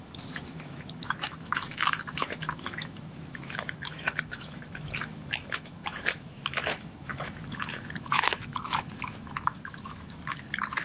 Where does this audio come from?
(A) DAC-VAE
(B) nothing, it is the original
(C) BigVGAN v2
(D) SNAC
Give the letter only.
A